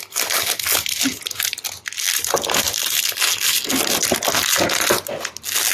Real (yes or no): yes